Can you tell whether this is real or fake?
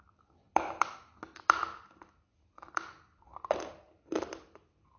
real